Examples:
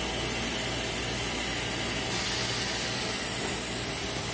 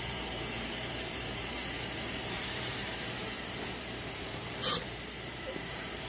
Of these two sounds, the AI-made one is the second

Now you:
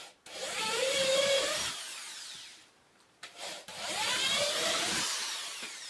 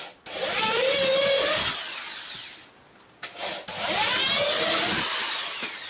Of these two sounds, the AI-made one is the first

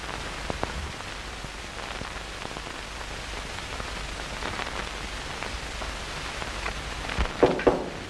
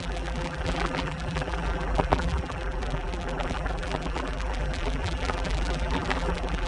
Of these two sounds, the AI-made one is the second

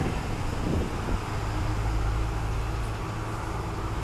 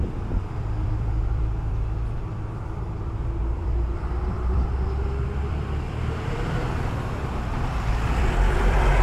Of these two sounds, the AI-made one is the second